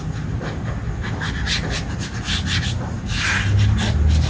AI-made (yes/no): no